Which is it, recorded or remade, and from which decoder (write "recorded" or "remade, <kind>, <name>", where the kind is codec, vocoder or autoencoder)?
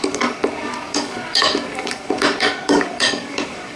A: remade, codec, DAC